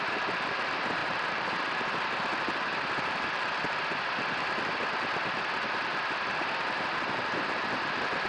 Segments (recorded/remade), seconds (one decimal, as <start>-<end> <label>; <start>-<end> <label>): 0.0-1.0 recorded; 1.0-1.6 remade; 1.6-8.3 recorded